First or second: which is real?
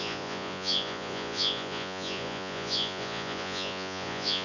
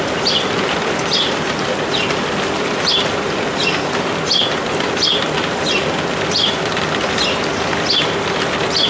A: second